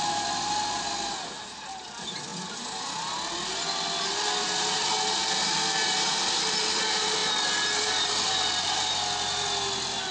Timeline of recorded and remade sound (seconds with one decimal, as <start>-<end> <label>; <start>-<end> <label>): 0.0-10.1 recorded